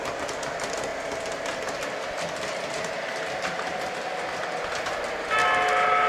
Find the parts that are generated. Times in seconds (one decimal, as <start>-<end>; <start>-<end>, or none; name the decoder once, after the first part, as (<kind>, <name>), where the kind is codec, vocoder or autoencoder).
none